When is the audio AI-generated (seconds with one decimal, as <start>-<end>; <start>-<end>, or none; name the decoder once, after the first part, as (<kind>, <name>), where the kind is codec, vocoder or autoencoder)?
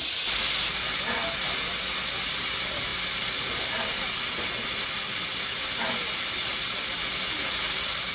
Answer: none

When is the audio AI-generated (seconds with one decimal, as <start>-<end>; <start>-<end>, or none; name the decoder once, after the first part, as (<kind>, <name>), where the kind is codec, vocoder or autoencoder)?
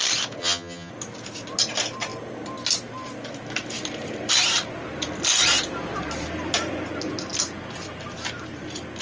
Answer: 0.4-0.9 (vocoder, HiFi-GAN)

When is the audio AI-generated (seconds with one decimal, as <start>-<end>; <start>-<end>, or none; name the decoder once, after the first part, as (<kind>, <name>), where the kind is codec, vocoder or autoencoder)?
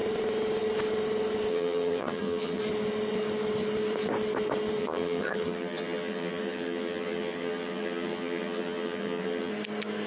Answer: 1.5-2.6 (vocoder, HiFi-GAN); 4.8-9.5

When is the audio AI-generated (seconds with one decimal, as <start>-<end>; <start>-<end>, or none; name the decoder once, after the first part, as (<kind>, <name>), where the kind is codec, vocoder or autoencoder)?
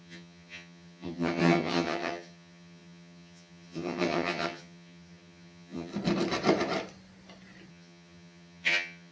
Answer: 0.0-5.9 (vocoder, HiFi-GAN); 7.7-9.1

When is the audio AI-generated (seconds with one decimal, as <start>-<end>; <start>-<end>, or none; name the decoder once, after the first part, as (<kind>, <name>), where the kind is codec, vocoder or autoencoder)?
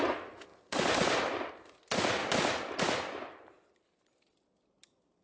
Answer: none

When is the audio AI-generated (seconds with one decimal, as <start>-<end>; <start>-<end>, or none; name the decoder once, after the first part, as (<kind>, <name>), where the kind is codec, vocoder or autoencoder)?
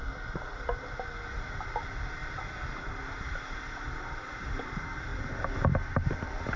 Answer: none